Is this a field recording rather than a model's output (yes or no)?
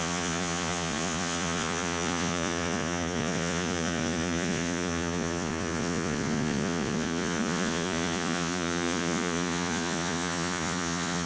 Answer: no